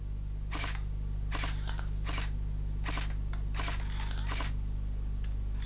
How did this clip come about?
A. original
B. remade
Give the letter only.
A